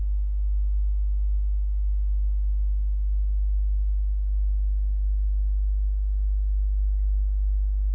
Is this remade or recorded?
remade